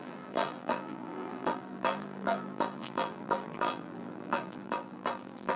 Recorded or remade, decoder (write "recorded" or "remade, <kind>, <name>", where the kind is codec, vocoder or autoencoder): remade, vocoder, BigVGAN v2